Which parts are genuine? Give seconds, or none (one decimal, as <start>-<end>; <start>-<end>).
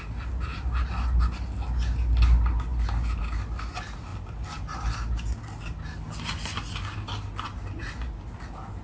0.0-8.8